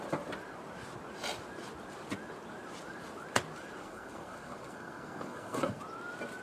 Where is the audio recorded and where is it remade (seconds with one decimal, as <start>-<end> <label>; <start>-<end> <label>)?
0.0-3.8 recorded; 3.8-5.8 remade; 5.8-6.4 recorded